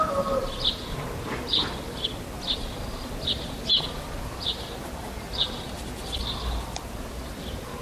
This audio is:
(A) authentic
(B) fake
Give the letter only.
A